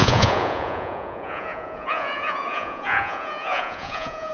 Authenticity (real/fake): fake